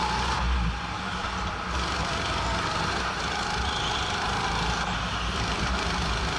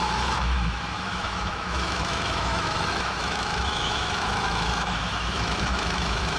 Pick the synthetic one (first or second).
second